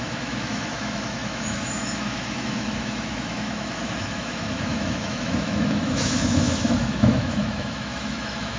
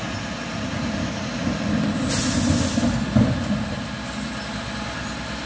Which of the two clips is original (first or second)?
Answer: second